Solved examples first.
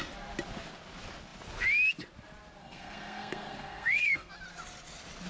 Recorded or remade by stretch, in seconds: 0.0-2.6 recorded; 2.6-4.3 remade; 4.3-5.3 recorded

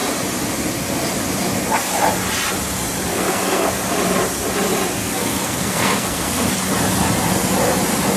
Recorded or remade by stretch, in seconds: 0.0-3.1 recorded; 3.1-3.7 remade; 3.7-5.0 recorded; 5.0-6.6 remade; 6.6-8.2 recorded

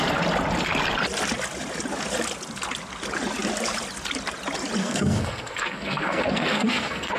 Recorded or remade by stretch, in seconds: 0.0-4.8 recorded; 4.8-7.2 remade